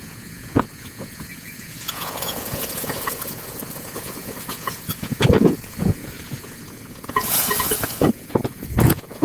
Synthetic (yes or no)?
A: yes